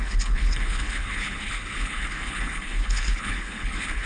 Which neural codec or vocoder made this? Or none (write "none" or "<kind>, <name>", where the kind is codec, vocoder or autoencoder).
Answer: codec, HILCodec